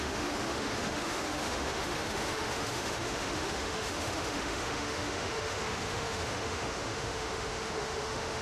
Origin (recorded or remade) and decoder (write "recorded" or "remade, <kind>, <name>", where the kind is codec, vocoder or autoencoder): remade, autoencoder, DAC-VAE